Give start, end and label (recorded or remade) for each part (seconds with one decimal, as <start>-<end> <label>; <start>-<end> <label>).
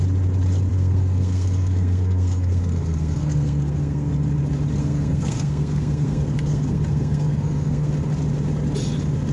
0.0-0.7 recorded; 0.7-4.1 remade; 4.1-4.8 recorded; 4.8-7.9 remade; 7.9-9.3 recorded